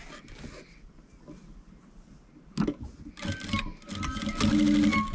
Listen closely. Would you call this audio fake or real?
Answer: real